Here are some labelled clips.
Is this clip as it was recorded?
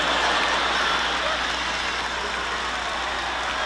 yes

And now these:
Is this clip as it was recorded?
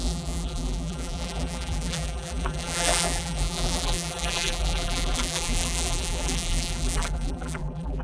no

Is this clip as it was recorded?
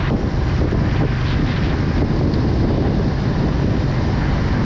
yes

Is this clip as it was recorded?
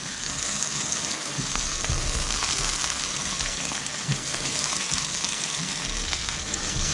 no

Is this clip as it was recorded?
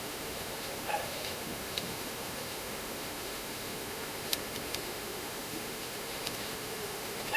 no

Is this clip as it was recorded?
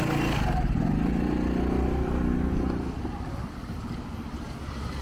yes